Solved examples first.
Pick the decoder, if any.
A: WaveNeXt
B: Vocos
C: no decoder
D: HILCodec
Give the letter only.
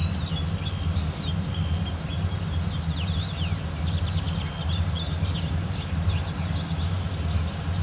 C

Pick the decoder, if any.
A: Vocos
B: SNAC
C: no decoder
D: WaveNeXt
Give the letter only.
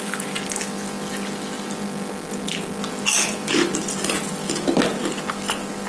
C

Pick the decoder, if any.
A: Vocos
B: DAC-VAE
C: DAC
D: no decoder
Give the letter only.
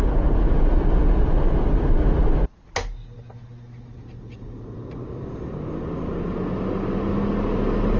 D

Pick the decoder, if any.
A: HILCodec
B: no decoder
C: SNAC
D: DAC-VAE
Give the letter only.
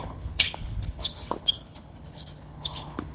A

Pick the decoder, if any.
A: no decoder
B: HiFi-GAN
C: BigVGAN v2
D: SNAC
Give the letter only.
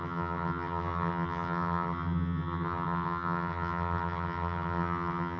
B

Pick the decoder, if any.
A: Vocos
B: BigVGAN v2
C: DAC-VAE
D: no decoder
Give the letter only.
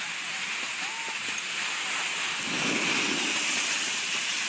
D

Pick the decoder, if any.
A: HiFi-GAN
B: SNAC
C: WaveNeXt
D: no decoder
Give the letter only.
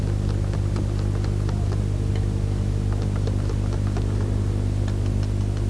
D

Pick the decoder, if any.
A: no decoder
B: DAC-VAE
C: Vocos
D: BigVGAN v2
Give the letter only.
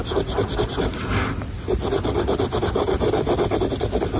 A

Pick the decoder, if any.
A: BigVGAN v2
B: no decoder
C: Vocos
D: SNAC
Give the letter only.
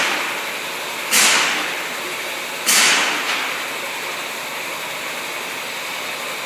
B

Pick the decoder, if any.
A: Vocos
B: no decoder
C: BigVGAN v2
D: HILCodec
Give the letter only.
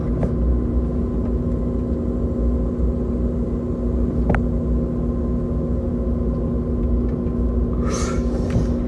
B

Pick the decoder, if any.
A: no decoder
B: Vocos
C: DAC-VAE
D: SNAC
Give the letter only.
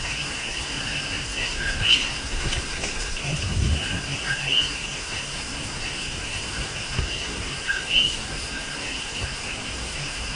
D